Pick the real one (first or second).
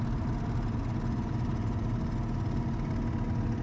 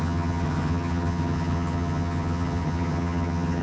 first